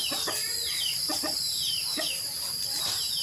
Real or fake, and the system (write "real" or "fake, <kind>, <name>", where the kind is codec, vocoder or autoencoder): fake, vocoder, BigVGAN v2